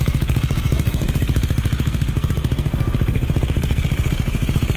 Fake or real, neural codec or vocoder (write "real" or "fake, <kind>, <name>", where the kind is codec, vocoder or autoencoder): fake, codec, SNAC